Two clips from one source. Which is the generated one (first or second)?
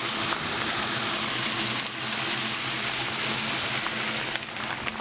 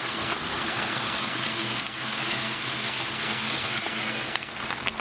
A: second